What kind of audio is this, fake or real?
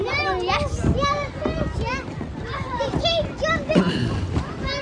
real